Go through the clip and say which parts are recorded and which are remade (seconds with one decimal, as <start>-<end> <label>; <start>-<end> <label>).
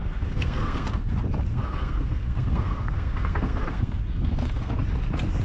0.0-1.1 remade; 1.1-1.5 recorded; 1.5-4.7 remade; 4.7-5.4 recorded